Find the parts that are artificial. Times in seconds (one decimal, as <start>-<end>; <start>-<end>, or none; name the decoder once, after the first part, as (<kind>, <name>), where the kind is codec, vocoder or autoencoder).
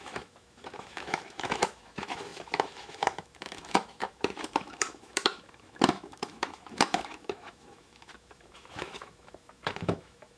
0.0-10.4 (autoencoder, DAC-VAE)